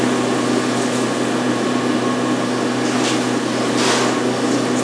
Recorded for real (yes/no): yes